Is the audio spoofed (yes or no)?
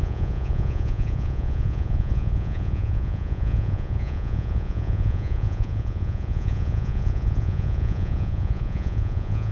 yes